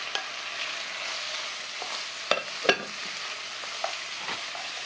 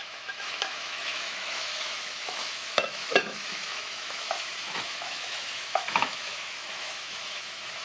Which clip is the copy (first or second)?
second